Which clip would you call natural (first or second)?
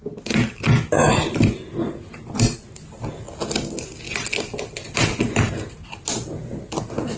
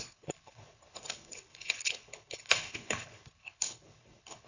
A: first